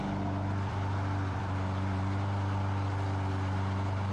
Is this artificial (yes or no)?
yes